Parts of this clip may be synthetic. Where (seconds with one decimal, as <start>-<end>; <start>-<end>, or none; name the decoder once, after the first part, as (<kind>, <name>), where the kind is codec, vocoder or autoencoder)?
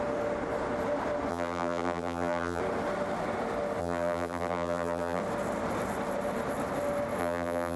1.3-2.6 (vocoder, BigVGAN v2); 3.8-5.2; 7.2-7.8